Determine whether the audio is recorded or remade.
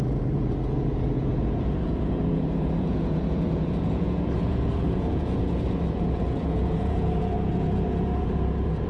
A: remade